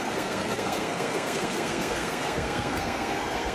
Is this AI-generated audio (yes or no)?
yes